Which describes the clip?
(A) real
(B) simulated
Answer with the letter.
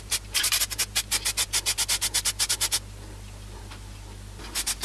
A